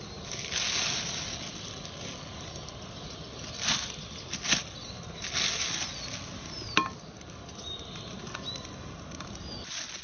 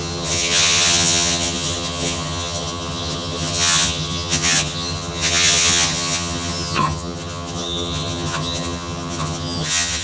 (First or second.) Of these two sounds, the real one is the first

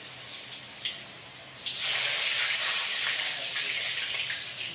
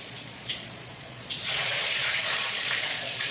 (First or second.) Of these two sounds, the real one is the first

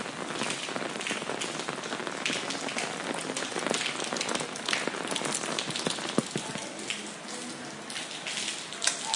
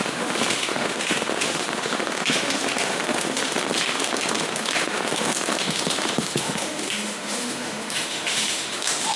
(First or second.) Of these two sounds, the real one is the first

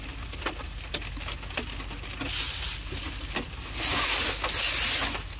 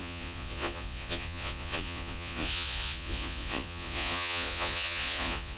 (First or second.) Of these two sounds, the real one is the first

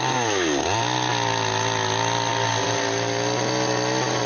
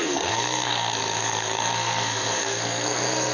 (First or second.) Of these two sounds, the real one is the first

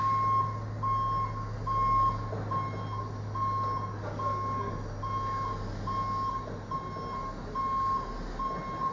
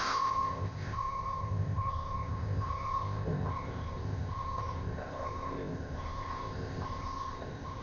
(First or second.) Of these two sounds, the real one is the first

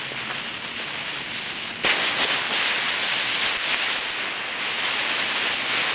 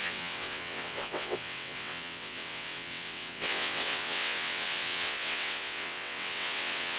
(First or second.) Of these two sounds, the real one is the first